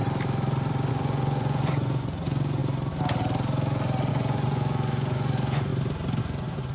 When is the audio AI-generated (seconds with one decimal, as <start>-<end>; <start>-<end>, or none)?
0.9-2.6; 4.1-5.7; 6.2-6.7